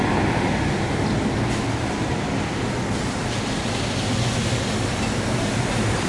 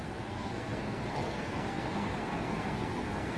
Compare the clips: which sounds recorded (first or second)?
first